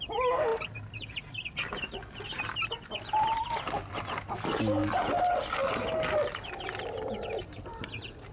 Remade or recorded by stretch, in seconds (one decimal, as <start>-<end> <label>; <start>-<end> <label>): 0.0-8.3 recorded